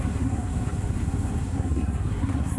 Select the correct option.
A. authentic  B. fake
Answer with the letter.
B